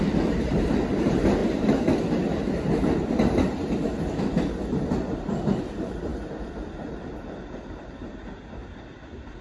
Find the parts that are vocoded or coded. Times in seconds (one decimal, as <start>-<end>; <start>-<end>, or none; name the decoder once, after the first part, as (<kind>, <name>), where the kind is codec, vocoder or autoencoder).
0.0-1.4 (vocoder, BigVGAN v2); 5.6-6.1; 6.8-8.6